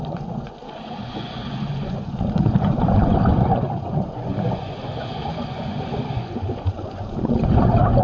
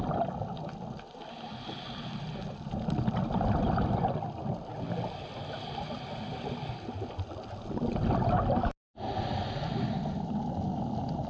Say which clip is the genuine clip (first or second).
second